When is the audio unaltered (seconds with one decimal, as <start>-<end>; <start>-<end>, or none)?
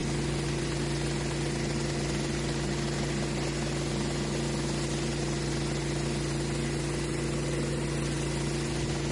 0.0-9.1